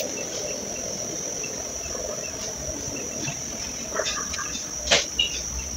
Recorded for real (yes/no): yes